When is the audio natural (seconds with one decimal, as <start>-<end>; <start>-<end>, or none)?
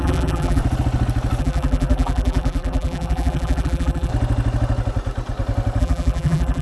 0.6-1.4; 4.1-5.8